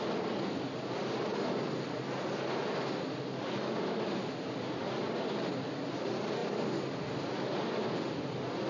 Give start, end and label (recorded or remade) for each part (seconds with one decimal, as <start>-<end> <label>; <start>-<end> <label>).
0.0-8.7 recorded